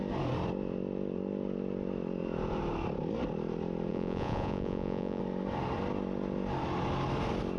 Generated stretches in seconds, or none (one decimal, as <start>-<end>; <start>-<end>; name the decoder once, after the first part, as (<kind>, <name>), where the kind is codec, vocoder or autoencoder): 3.9-5.2 (vocoder, Vocos)